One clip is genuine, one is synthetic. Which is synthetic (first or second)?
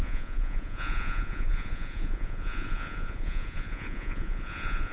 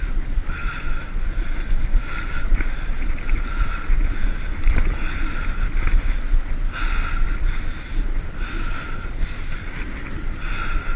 first